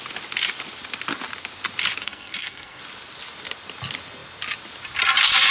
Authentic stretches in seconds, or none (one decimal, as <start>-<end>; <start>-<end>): 0.0-2.0; 2.8-5.5